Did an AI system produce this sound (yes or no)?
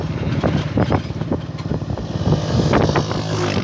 no